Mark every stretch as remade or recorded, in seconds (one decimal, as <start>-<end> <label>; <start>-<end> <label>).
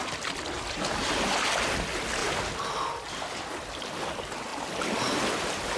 0.0-5.8 recorded